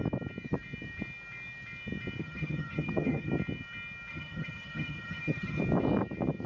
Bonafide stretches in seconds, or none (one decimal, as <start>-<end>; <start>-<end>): 0.0-2.2; 3.3-4.1; 5.6-6.5